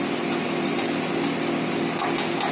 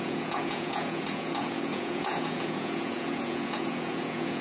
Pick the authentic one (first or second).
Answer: first